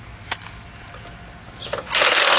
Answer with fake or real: real